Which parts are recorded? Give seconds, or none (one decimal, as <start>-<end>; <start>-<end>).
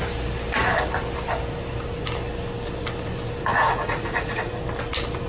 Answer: 0.0-3.5; 4.6-5.3